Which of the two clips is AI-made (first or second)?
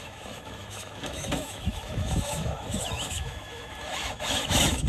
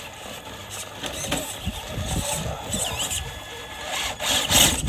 first